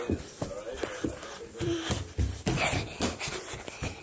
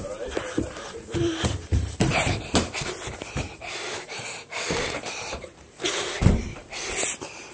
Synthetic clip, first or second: second